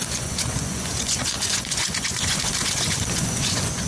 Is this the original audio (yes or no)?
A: no